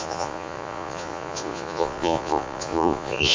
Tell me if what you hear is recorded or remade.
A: remade